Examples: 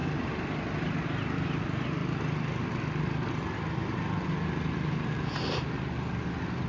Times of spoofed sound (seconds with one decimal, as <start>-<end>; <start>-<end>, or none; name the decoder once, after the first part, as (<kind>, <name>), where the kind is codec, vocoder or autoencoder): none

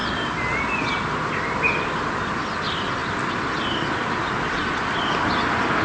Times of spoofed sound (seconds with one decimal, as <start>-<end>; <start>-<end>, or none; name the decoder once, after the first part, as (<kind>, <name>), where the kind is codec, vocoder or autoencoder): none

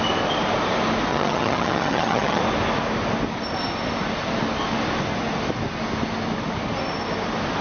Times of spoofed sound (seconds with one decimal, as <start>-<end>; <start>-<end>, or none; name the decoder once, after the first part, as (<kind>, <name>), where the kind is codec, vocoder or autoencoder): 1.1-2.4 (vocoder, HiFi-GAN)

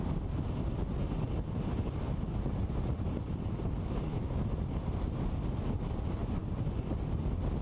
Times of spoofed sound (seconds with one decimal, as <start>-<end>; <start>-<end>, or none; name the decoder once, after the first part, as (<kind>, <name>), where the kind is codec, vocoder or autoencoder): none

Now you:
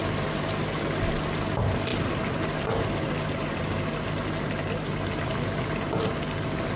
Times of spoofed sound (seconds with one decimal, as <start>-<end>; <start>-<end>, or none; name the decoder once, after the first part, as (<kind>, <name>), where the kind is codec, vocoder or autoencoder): none

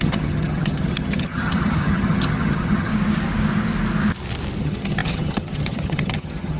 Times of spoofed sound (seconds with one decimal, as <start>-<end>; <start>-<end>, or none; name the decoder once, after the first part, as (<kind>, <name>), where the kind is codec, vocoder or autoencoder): 0.0-2.9 (vocoder, HiFi-GAN); 4.6-6.6

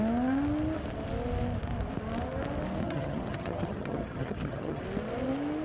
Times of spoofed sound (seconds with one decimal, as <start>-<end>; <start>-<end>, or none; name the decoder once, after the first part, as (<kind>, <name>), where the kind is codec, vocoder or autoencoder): 2.8-4.8 (vocoder, HiFi-GAN)